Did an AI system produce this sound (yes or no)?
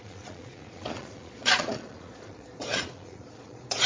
yes